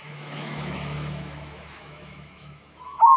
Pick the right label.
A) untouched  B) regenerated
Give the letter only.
B